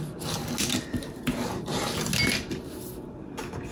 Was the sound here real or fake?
real